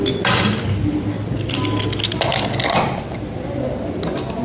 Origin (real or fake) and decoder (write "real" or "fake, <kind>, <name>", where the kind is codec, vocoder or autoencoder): real